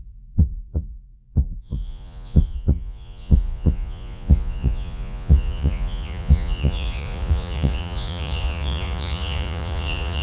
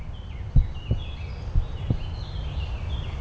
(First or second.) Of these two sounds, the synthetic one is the first